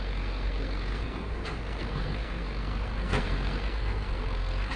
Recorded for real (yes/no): no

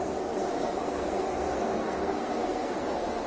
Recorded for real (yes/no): no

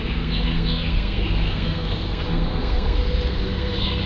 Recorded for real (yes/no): no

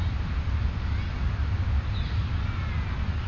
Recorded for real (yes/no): yes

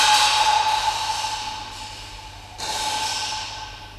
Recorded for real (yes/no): yes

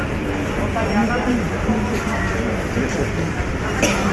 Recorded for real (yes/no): yes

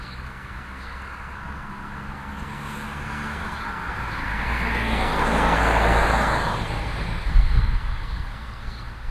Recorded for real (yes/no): no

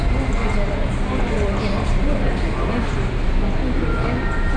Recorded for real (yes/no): yes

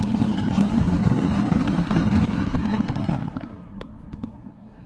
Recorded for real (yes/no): no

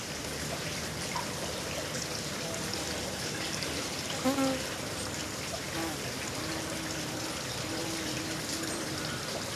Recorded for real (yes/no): yes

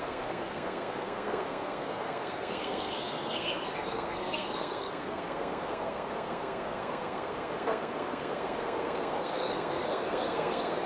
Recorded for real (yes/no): no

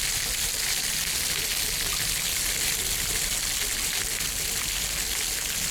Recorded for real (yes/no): yes